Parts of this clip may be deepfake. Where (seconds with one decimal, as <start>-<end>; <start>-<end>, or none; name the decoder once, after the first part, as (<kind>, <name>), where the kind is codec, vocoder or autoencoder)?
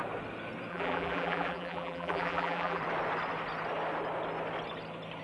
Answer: 0.7-2.8 (vocoder, BigVGAN v2)